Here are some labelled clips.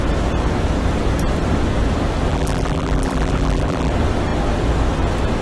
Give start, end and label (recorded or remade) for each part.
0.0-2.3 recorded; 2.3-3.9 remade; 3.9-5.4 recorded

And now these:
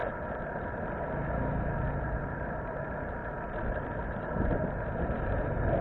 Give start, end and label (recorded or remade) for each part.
0.0-5.8 recorded

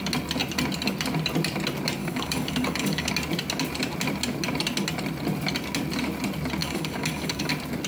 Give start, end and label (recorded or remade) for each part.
0.0-2.0 recorded; 2.0-3.1 remade; 3.1-6.6 recorded; 6.6-7.5 remade; 7.5-7.9 recorded

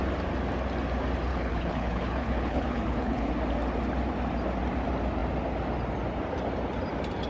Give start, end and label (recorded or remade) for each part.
0.0-1.3 recorded; 1.3-3.3 remade; 3.3-7.3 recorded

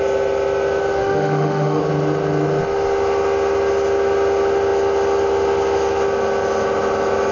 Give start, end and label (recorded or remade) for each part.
0.0-1.0 recorded; 1.0-1.8 remade; 1.8-7.3 recorded

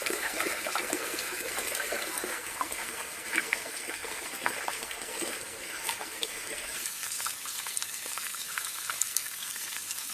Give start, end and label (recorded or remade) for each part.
0.0-10.1 remade